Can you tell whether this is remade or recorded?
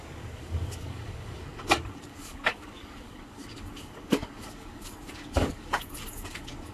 remade